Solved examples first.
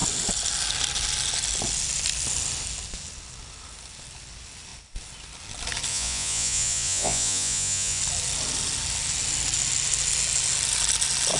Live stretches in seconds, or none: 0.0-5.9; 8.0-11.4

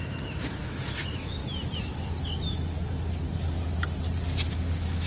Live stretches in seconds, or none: 1.4-4.5

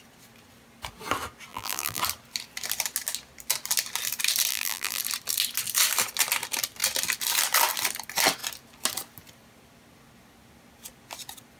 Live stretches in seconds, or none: 0.0-1.5; 2.0-4.5; 5.0-11.6

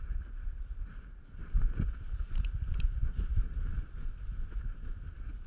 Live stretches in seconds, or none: 0.0-5.5

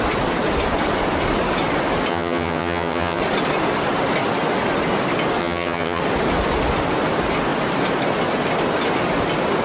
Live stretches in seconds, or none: 0.0-2.1; 3.2-5.4; 6.0-9.6

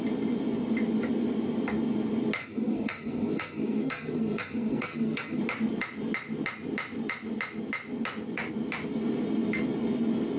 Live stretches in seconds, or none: 0.0-2.4; 5.4-10.4

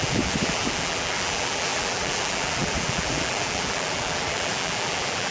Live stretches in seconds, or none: none